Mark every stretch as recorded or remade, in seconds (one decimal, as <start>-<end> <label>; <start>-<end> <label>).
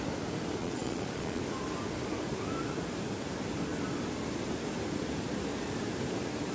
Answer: 0.0-0.6 recorded; 0.6-1.4 remade; 1.4-6.5 recorded